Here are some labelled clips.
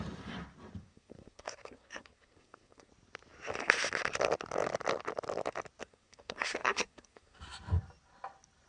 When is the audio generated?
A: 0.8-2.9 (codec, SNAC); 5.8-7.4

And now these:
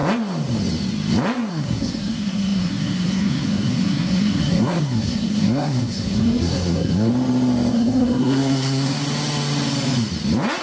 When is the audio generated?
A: 1.5-7.1 (codec, SNAC); 7.7-9.0

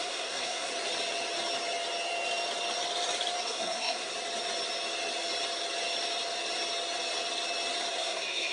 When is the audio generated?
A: 0.0-0.7 (codec, SNAC); 3.4-4.1; 7.9-8.5

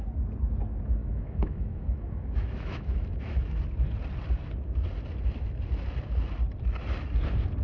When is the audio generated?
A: 1.0-3.6 (autoencoder, DAC-VAE)

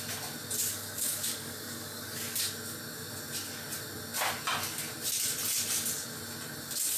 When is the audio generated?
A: 0.7-2.4 (codec, DAC)

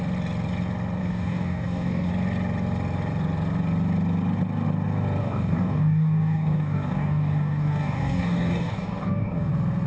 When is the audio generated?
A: 1.0-2.1 (codec, DAC); 5.2-9.5